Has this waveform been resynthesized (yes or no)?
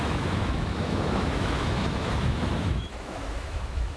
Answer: yes